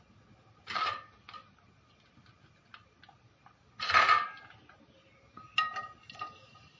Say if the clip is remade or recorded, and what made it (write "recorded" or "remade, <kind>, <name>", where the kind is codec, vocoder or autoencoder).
remade, vocoder, BigVGAN v2